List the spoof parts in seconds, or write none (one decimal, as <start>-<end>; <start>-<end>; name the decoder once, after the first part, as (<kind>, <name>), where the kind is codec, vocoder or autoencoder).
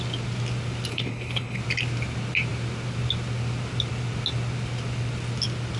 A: 0.9-1.6 (codec, HILCodec)